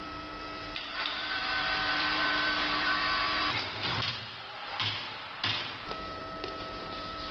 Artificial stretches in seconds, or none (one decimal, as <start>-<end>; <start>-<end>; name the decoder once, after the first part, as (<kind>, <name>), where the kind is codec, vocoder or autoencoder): 0.0-6.2 (vocoder, BigVGAN v2); 6.8-7.3